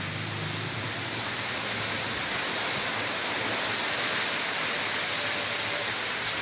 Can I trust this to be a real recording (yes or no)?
yes